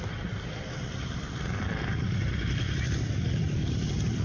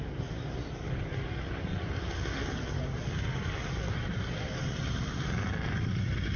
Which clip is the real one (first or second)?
second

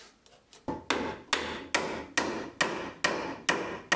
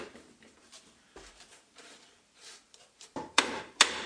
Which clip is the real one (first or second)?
first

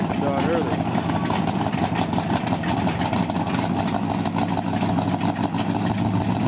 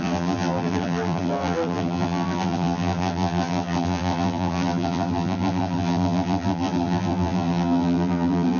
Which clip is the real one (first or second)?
first